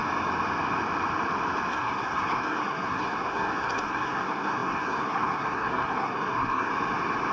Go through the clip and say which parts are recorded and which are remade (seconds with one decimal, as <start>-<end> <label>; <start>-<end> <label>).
0.0-1.7 recorded; 1.7-6.7 remade; 6.7-7.3 recorded